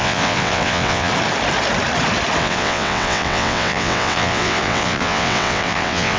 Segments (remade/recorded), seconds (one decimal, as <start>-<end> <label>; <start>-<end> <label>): 0.0-1.1 remade; 1.1-2.4 recorded; 2.4-6.2 remade